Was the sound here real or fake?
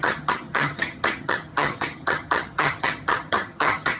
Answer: fake